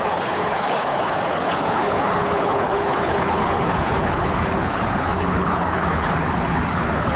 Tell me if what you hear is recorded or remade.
remade